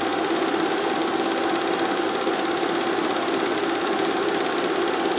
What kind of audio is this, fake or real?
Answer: real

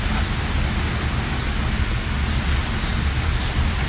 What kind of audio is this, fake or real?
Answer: real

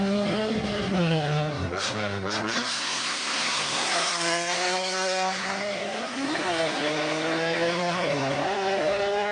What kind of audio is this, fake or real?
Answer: fake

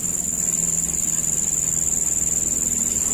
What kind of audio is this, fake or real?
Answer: real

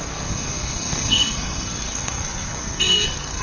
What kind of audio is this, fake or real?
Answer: fake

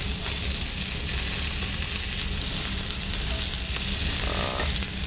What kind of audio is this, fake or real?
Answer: real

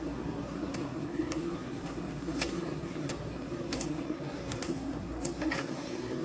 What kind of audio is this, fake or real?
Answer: fake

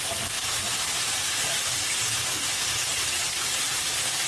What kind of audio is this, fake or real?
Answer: real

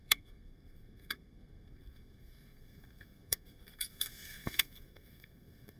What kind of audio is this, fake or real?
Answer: fake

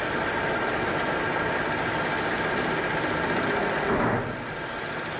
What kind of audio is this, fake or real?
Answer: real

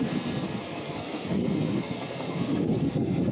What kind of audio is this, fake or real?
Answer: fake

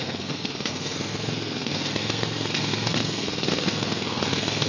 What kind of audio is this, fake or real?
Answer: fake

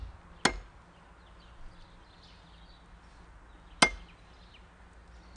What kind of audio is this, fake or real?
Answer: real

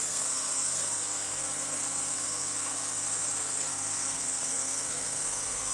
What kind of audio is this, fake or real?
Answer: fake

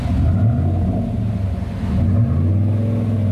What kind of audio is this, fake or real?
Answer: real